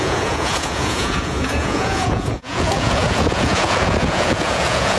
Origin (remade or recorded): remade